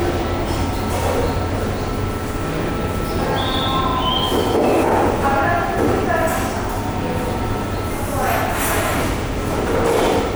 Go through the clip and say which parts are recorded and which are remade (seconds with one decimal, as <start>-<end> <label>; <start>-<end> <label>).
0.0-10.4 recorded